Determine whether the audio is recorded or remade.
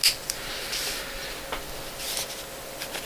recorded